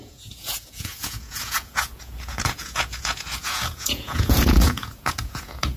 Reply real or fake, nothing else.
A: fake